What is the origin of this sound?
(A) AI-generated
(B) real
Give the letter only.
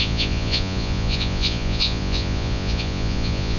A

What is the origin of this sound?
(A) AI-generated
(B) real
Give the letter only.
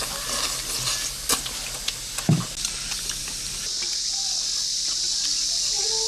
B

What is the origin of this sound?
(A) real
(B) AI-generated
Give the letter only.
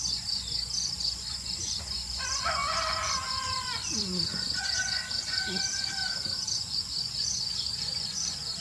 B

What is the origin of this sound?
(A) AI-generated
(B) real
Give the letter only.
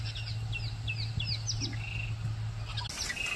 B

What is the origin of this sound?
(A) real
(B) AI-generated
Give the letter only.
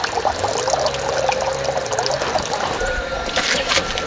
A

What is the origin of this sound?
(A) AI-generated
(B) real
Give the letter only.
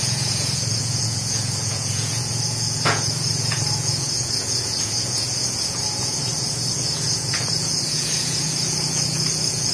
A